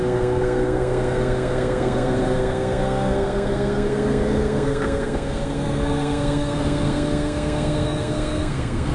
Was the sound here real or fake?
fake